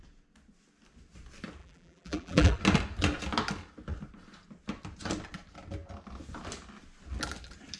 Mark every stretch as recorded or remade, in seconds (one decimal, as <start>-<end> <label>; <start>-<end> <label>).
0.0-1.6 recorded; 1.6-2.6 remade; 2.6-7.8 recorded